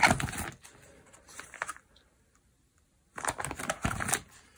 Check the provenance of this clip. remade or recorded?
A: recorded